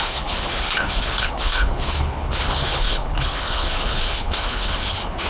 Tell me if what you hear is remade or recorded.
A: remade